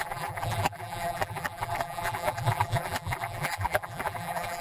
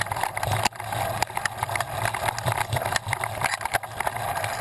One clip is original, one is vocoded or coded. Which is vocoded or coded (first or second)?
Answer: first